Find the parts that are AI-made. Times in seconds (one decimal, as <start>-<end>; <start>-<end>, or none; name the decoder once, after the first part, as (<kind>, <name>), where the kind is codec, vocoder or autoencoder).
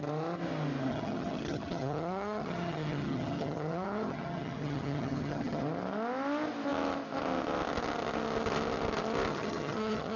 0.9-5.6 (vocoder, HiFi-GAN); 9.3-10.2